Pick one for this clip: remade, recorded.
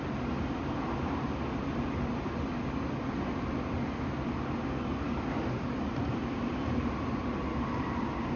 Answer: recorded